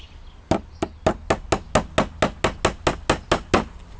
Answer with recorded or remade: recorded